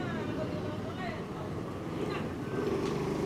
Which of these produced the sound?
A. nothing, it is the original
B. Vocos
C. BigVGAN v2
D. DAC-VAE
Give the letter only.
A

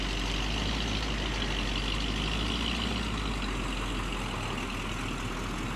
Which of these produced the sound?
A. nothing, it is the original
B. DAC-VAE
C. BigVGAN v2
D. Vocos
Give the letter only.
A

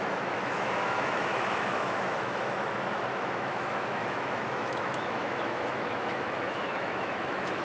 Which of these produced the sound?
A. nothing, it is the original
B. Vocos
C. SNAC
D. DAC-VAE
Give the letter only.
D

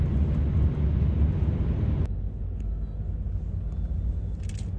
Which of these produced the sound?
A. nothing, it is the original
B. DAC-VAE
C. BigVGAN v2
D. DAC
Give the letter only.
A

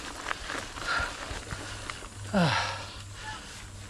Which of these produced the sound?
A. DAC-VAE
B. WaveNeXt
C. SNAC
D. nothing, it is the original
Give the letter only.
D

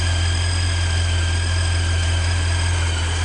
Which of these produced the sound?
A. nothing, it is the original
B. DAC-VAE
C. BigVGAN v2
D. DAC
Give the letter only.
A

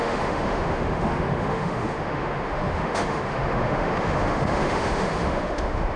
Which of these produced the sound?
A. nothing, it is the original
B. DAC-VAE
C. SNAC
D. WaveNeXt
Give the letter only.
B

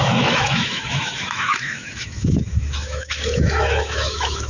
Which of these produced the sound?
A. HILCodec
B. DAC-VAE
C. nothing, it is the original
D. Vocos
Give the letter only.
B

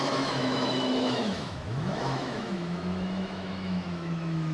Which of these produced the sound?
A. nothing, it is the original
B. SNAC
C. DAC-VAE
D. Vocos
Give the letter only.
C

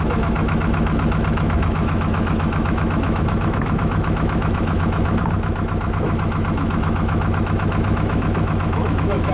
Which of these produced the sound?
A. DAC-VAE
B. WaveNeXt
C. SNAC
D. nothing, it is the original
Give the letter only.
A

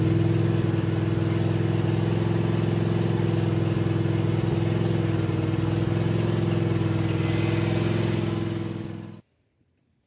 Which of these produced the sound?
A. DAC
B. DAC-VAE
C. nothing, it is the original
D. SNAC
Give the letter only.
C